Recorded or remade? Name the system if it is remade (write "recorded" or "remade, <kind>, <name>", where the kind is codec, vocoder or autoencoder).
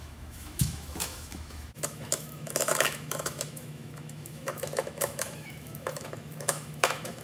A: remade, autoencoder, DAC-VAE